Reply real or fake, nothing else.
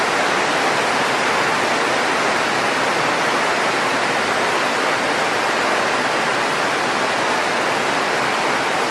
real